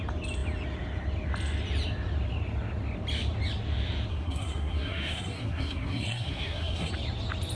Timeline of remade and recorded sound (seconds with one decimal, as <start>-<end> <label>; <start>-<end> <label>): 0.0-4.1 recorded; 4.1-6.9 remade; 6.9-7.6 recorded